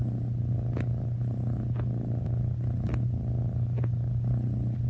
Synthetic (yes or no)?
no